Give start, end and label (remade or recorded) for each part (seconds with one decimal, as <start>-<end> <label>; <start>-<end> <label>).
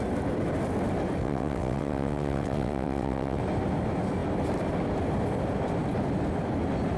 0.0-1.2 recorded; 1.2-3.4 remade; 3.4-7.0 recorded